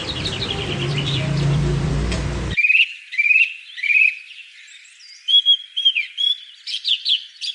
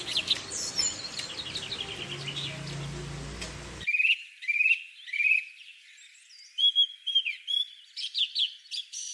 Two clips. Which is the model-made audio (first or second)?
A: first